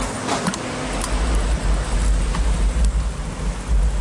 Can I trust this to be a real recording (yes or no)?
yes